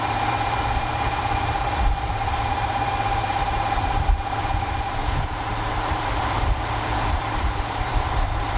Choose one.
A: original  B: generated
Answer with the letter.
B